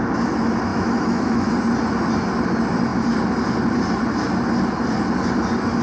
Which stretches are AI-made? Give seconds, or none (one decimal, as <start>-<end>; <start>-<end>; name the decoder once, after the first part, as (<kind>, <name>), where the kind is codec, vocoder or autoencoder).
0.7-1.5 (autoencoder, DAC-VAE)